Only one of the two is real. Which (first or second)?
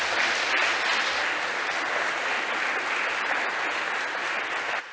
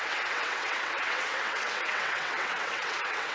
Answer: first